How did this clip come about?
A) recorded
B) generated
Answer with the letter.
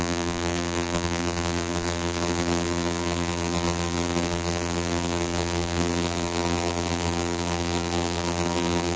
B